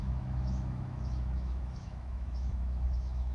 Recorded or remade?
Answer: remade